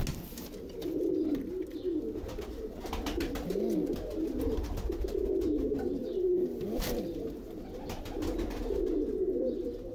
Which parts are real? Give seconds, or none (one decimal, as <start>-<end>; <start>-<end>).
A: 0.0-9.9